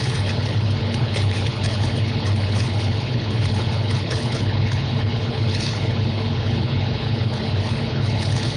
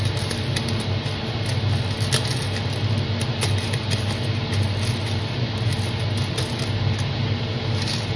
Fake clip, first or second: first